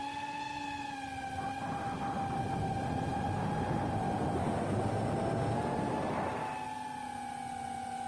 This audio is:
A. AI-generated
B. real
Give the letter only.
B